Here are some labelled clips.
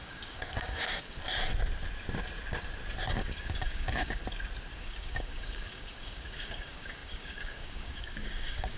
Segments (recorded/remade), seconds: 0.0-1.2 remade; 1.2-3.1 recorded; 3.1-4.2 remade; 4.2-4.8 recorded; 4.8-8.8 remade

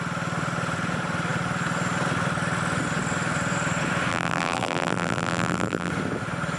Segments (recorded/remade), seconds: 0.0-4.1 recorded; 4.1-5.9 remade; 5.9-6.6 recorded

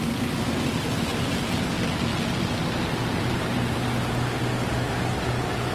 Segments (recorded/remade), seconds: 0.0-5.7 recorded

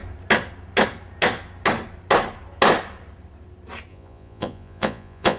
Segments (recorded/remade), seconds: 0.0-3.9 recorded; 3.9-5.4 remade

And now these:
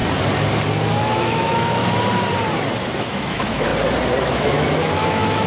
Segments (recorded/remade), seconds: 0.0-1.0 recorded; 1.0-1.8 remade; 1.8-3.0 recorded; 3.0-3.7 remade; 3.7-4.2 recorded; 4.2-5.5 remade

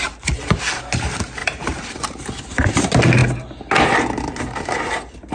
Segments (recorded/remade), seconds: 0.0-1.4 recorded; 1.4-2.8 remade; 2.8-5.3 recorded

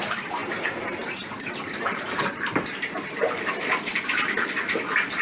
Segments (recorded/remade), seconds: 0.0-3.9 remade; 3.9-5.2 recorded